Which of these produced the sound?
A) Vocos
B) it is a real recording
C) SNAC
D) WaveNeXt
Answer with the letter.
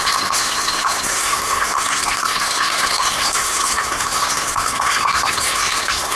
C